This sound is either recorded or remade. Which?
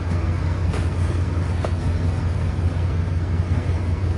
remade